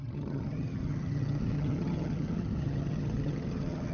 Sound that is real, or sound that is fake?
fake